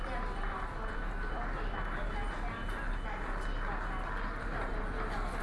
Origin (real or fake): real